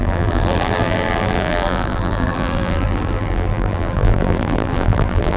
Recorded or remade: remade